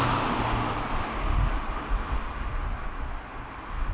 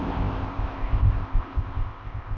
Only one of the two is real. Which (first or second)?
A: first